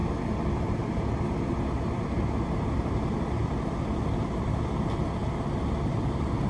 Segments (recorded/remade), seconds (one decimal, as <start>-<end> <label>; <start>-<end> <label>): 0.0-6.5 recorded